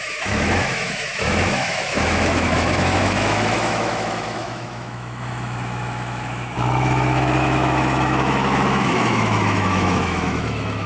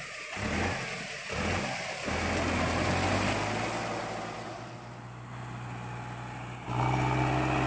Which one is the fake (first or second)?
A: first